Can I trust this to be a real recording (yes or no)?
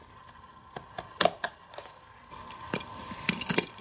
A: yes